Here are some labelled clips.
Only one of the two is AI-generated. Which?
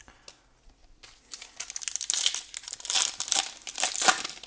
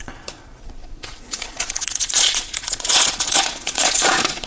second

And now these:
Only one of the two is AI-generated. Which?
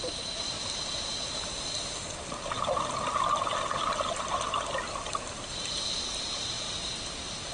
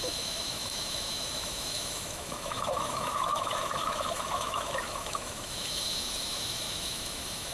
second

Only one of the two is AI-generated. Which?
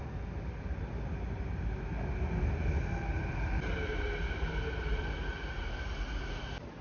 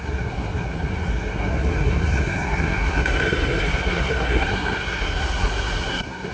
second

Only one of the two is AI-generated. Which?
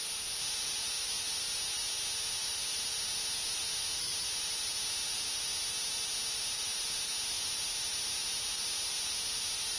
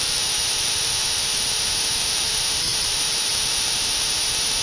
second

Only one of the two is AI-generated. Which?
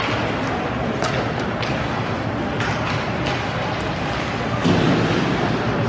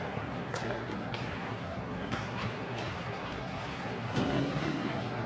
second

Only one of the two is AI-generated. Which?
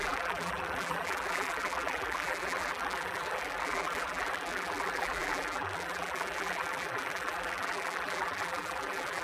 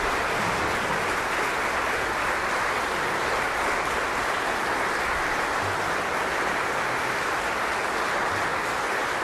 first